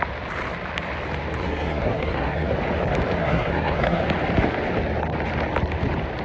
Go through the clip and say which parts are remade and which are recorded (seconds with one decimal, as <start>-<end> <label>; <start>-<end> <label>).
0.0-1.4 recorded; 1.4-2.5 remade; 2.5-3.2 recorded; 3.2-4.0 remade; 4.0-6.2 recorded